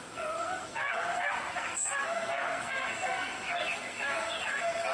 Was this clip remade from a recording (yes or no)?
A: yes